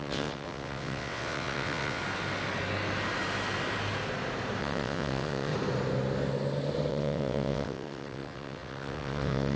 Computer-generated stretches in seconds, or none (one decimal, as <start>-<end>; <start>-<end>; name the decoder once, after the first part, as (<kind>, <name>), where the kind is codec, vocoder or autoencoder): 0.0-2.0 (vocoder, WaveNeXt); 4.6-5.5; 6.9-9.6